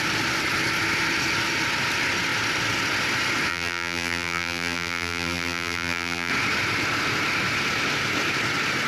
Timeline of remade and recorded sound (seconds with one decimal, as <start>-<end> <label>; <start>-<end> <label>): 0.0-3.5 recorded; 3.5-6.3 remade; 6.3-8.9 recorded